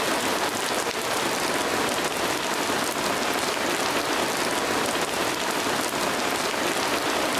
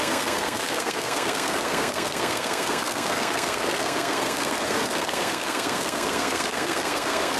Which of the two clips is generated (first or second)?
second